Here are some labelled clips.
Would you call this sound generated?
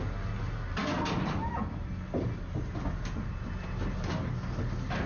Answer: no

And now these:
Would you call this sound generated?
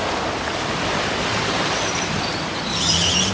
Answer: no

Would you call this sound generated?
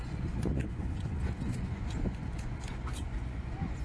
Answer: yes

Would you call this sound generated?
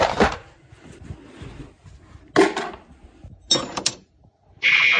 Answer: no